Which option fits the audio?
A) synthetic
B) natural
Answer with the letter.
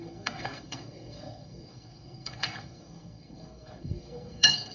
A